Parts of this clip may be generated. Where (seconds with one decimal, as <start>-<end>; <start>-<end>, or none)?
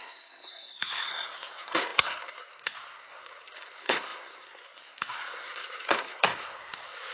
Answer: 0.0-7.1